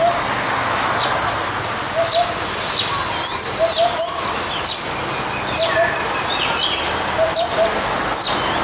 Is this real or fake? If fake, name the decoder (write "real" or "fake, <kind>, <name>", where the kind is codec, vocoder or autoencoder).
real